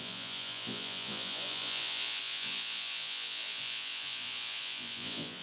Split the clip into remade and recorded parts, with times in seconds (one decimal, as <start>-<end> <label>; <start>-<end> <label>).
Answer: 0.0-5.4 remade